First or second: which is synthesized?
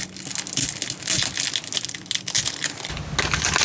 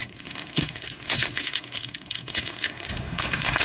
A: second